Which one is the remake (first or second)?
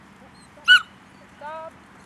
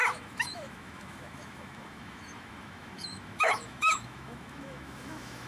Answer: second